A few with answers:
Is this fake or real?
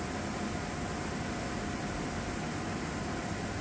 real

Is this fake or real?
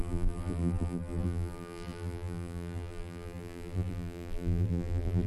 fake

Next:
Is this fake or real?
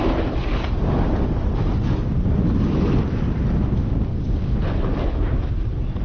real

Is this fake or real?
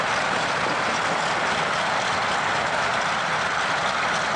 real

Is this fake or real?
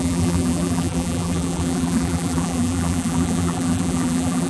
fake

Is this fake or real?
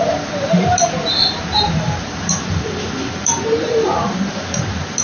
fake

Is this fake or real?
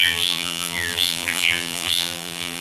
fake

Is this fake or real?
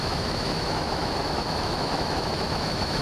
fake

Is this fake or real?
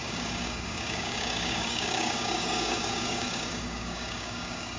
fake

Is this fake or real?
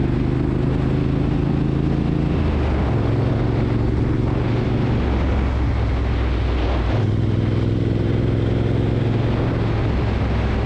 real